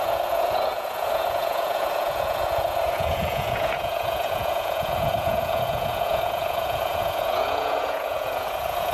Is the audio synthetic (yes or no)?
yes